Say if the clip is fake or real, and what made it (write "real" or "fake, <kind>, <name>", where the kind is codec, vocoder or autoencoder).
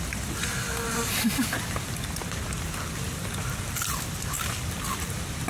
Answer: fake, vocoder, BigVGAN v2